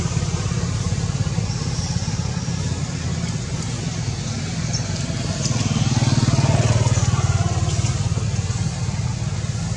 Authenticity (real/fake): real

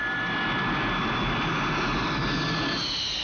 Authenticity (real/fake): real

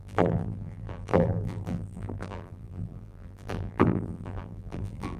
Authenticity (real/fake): fake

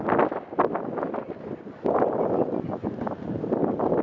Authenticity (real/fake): real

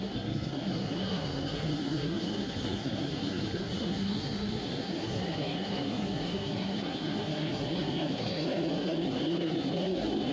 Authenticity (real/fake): fake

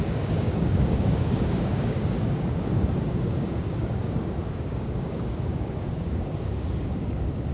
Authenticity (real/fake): fake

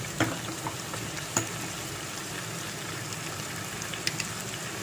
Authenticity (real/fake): real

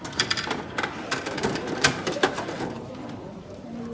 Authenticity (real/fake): fake